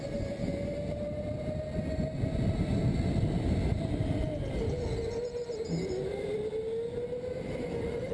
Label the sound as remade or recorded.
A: recorded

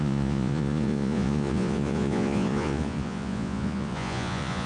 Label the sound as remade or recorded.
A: remade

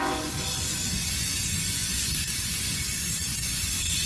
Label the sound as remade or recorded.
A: remade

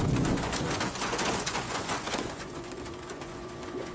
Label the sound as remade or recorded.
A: remade